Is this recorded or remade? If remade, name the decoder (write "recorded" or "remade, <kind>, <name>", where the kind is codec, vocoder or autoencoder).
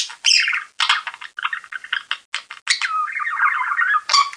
recorded